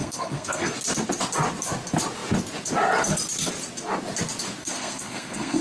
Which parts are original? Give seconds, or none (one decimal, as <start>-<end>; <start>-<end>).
0.7-4.6